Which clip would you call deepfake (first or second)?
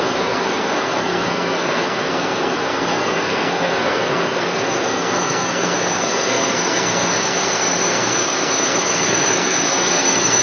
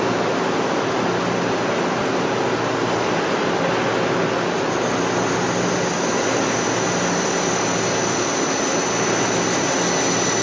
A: first